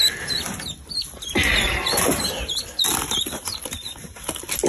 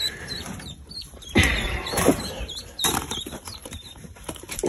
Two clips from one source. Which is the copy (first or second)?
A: second